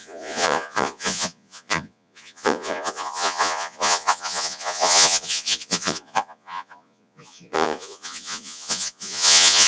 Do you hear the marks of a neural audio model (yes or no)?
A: yes